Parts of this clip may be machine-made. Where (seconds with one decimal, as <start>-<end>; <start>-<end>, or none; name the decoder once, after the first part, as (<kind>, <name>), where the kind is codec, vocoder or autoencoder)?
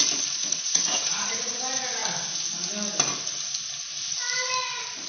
0.4-1.6 (vocoder, Vocos)